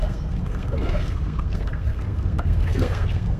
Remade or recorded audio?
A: remade